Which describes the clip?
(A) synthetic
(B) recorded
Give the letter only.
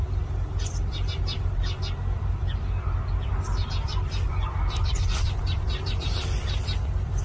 B